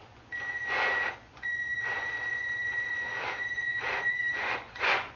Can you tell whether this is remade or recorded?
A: remade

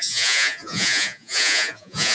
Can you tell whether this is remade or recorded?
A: remade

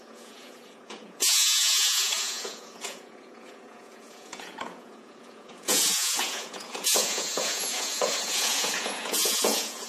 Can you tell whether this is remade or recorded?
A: remade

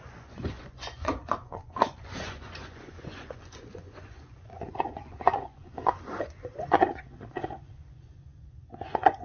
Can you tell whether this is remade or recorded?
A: remade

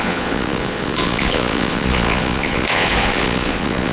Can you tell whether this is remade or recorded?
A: remade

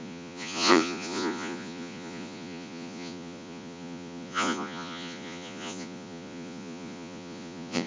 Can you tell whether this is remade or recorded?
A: remade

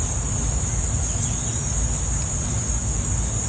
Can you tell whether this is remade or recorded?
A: recorded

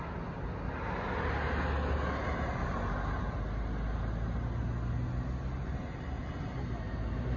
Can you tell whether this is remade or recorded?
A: recorded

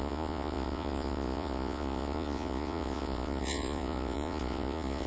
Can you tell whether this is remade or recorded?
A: remade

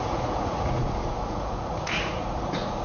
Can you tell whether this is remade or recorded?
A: remade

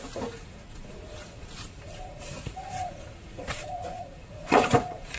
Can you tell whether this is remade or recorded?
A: remade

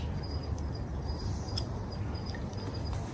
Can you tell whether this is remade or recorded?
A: recorded